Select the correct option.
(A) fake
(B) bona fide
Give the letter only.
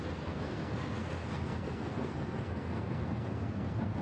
A